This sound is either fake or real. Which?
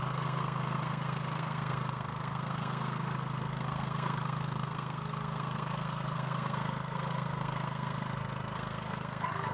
fake